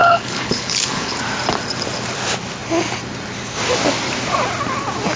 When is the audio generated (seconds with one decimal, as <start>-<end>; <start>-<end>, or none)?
0.0-1.2